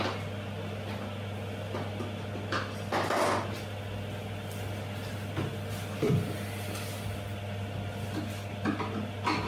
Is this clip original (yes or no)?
yes